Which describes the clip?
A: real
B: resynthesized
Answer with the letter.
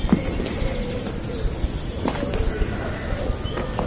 A